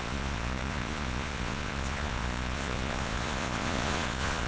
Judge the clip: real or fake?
fake